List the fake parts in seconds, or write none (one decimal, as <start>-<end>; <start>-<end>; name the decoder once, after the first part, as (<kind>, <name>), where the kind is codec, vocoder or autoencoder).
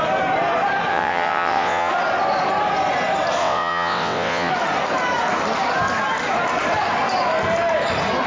0.9-1.9 (vocoder, WaveNeXt); 3.4-4.5